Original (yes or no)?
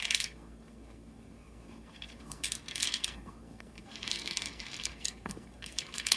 no